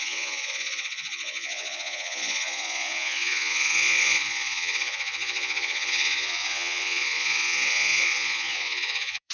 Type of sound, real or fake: fake